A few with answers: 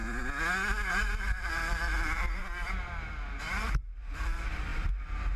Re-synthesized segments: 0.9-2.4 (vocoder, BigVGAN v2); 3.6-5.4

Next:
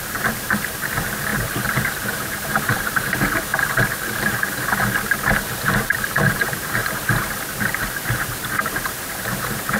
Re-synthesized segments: 0.0-3.5 (vocoder, BigVGAN v2); 6.3-6.8; 9.2-9.8

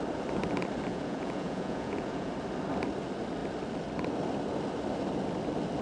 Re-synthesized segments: 0.9-2.3 (vocoder, Vocos)

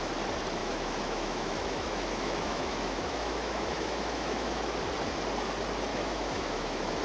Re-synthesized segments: 0.6-4.8 (autoencoder, DAC-VAE); 5.9-7.0

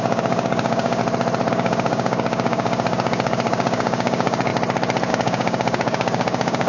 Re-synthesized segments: 0.0-1.0 (codec, DAC); 1.5-4.5; 5.1-6.7

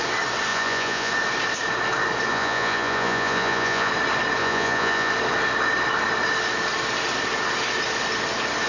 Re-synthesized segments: 0.5-1.1 (vocoder, Vocos); 2.3-3.9; 4.4-5.1

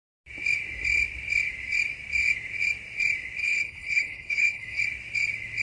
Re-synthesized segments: 3.4-4.8 (codec, HILCodec)

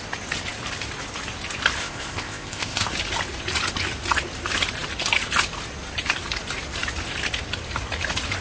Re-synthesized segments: 1.8-2.9 (codec, ZipCodec)